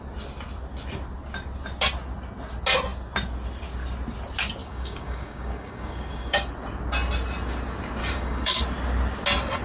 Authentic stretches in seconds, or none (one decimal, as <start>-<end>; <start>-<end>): 0.0-4.6; 6.5-8.0; 8.6-9.6